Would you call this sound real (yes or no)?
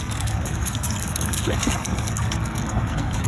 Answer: no